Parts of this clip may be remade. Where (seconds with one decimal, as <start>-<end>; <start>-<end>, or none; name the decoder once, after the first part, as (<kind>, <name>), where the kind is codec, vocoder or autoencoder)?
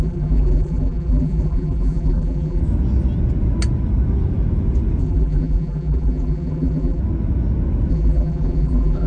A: 0.0-2.6 (vocoder, BigVGAN v2); 5.0-7.0; 7.9-9.1